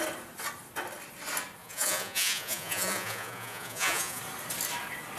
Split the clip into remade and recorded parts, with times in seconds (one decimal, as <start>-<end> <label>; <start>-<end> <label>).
0.0-1.6 recorded; 1.6-4.2 remade; 4.2-5.2 recorded